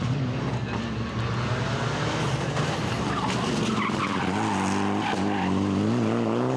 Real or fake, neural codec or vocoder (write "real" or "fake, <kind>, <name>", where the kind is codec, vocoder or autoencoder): real